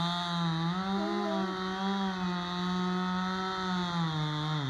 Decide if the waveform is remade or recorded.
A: recorded